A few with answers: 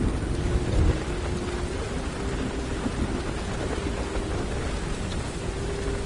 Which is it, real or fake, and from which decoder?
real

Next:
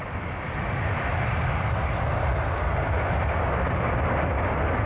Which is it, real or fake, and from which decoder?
real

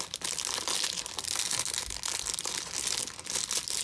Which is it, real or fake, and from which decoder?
real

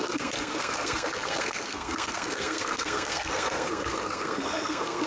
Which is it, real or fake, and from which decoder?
fake, codec, SNAC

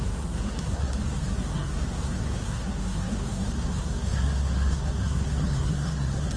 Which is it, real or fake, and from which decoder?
fake, codec, SNAC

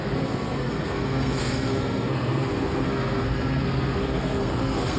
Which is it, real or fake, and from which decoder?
fake, codec, SNAC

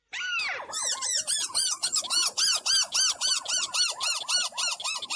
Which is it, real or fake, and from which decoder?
real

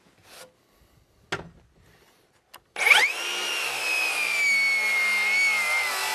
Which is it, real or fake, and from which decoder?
real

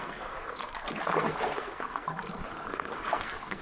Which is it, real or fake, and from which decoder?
fake, codec, SNAC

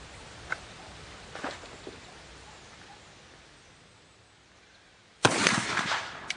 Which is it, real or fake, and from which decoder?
real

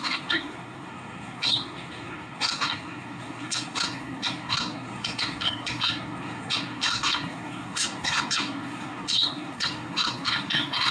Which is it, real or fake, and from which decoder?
fake, codec, SNAC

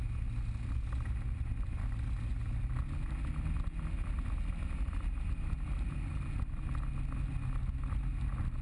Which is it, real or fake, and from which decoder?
real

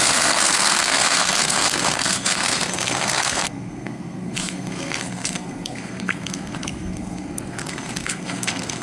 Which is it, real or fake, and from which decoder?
fake, codec, SNAC